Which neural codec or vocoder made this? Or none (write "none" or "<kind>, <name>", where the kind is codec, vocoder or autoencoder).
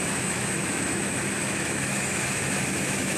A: autoencoder, DAC-VAE